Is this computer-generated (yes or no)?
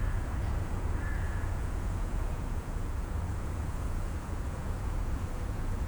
yes